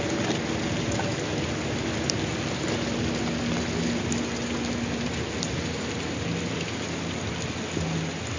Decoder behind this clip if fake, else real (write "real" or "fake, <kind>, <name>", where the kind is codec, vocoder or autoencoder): real